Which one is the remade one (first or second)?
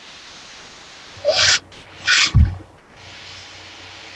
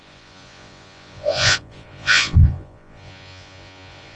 second